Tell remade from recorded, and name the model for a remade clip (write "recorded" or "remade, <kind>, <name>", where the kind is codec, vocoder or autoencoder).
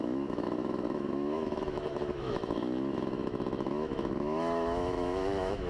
remade, autoencoder, DAC-VAE